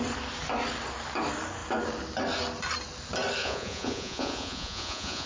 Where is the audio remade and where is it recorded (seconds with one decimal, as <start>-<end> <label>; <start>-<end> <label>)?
0.0-3.4 recorded; 3.4-5.3 remade